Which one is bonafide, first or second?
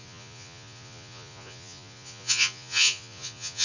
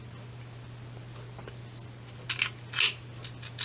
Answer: second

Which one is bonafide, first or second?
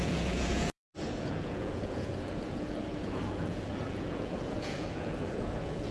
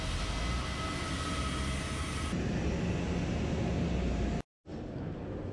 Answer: second